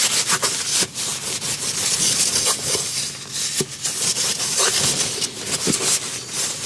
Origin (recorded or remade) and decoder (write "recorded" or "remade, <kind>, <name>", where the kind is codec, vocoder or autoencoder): recorded